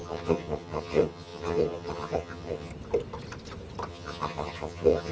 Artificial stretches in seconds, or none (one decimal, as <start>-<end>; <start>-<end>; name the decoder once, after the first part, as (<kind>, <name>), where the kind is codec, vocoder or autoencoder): 0.0-2.7 (vocoder, HiFi-GAN); 3.9-5.1